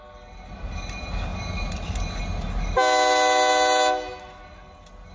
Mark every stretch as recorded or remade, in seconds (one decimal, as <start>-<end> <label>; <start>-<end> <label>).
0.0-5.1 recorded